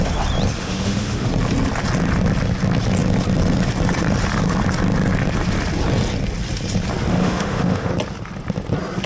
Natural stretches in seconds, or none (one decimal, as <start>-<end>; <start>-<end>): 0.0-0.6; 1.3-7.1; 7.9-9.1